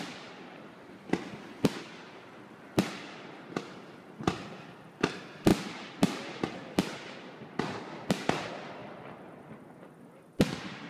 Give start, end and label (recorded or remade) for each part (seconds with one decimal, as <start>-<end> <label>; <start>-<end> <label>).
0.0-10.9 recorded

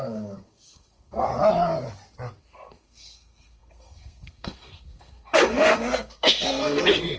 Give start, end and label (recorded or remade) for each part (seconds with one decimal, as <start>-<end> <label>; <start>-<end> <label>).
0.0-1.3 remade; 1.3-2.4 recorded; 2.4-7.2 remade

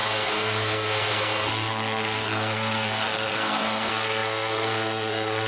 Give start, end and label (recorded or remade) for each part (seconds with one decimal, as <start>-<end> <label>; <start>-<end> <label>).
0.0-5.5 remade

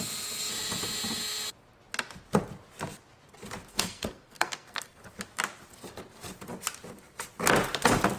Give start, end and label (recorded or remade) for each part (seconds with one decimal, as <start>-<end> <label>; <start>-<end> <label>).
0.0-3.7 recorded; 3.7-5.0 remade; 5.0-8.2 recorded

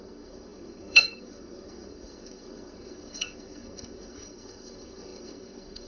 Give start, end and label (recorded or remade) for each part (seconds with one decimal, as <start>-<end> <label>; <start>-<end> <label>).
0.0-5.9 remade

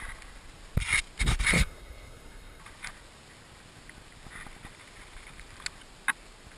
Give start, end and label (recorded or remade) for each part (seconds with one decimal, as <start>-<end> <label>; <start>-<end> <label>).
0.0-1.5 recorded; 1.5-2.6 remade; 2.6-6.6 recorded

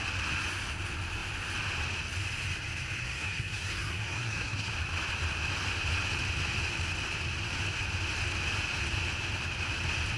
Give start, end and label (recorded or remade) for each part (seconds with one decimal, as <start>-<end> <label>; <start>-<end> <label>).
0.0-3.0 recorded; 3.0-4.7 remade; 4.7-10.2 recorded